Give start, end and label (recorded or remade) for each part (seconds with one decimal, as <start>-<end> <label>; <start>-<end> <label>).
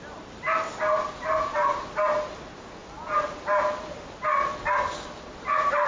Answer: 0.0-5.9 recorded